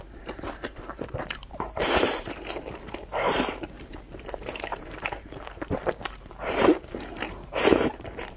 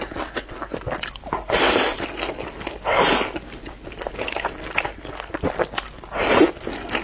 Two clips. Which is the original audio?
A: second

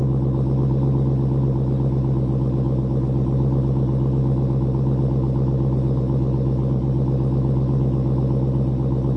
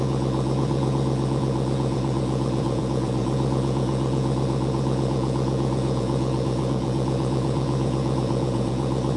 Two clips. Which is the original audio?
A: first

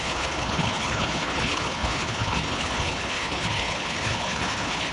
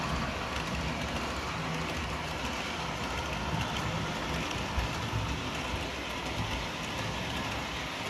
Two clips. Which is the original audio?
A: second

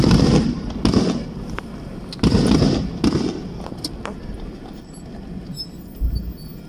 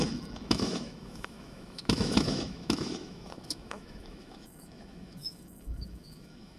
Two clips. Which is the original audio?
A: first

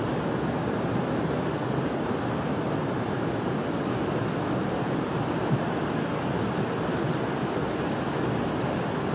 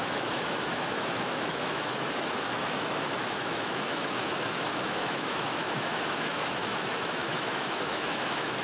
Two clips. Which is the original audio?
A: first